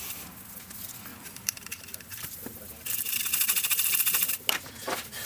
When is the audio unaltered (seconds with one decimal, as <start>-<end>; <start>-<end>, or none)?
0.0-1.1; 4.3-5.3